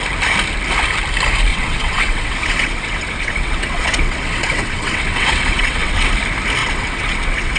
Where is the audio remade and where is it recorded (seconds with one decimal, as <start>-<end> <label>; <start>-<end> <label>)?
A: 0.0-1.5 recorded; 1.5-6.1 remade; 6.1-6.6 recorded; 6.6-7.6 remade